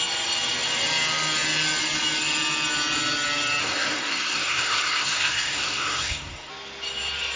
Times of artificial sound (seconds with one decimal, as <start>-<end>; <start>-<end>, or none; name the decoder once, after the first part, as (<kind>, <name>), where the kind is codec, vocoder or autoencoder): 3.6-6.5 (codec, SNAC)